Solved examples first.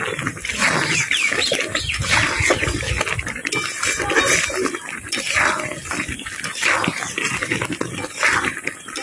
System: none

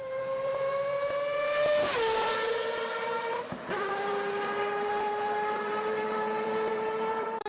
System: vocoder, BigVGAN v2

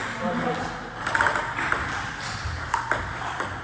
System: none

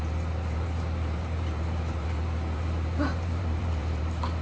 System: vocoder, BigVGAN v2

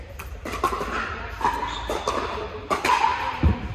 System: none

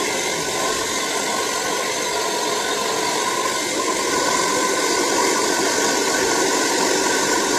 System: none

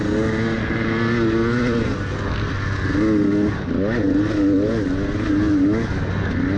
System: none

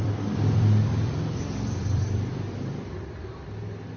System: vocoder, BigVGAN v2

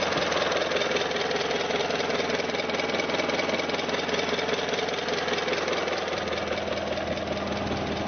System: none